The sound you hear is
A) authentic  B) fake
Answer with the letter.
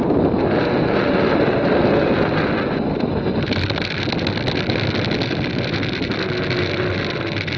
A